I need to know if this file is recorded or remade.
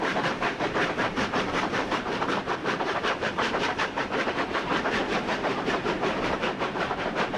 remade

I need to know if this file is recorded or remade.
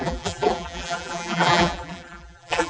remade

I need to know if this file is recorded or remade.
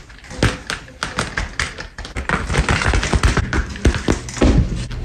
recorded